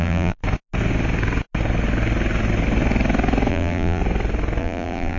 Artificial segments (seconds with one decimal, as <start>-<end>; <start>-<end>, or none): 0.0-0.4; 3.5-4.0; 4.6-5.2